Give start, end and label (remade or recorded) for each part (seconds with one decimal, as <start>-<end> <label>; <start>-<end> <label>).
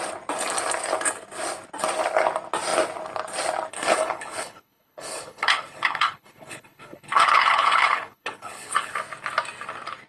0.0-3.7 recorded; 3.7-8.9 remade; 8.9-10.1 recorded